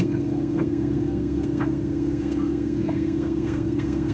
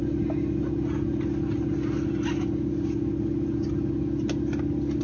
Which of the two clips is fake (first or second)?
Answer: first